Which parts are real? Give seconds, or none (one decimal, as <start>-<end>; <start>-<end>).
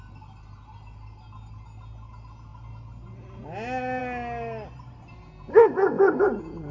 0.0-5.5; 6.2-6.7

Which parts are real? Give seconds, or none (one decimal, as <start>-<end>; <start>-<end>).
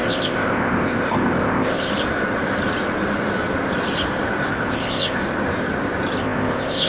1.9-4.5; 5.2-6.2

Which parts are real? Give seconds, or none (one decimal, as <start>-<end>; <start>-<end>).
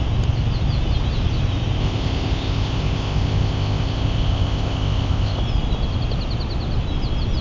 0.0-1.8; 5.4-7.4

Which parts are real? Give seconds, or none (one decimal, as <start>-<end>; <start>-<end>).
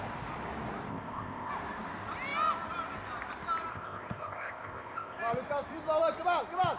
0.0-0.9; 1.5-3.7; 5.2-6.8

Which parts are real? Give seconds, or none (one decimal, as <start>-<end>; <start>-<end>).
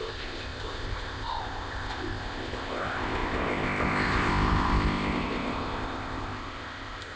none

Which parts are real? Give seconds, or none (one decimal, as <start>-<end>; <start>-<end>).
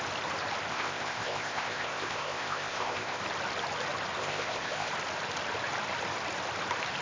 0.0-0.7; 3.2-4.2; 4.9-7.0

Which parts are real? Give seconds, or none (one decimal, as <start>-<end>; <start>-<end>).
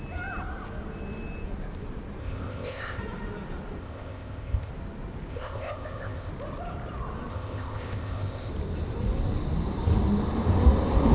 0.0-2.2; 3.0-3.8; 4.7-5.3; 6.3-7.3; 8.5-11.1